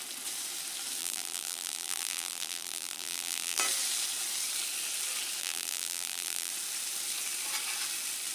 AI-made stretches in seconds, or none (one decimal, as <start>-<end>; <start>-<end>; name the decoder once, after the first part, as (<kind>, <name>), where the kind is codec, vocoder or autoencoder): 1.0-3.6 (vocoder, BigVGAN v2); 5.4-6.5